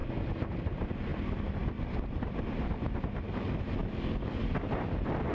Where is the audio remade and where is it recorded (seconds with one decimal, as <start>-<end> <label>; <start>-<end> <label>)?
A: 0.0-0.6 recorded; 0.6-1.1 remade; 1.1-1.8 recorded; 1.8-3.8 remade; 3.8-4.4 recorded; 4.4-5.3 remade